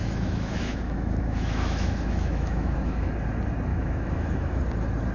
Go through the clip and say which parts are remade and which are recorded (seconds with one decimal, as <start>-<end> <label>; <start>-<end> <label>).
0.0-3.1 remade; 3.1-3.7 recorded; 3.7-4.6 remade; 4.6-5.1 recorded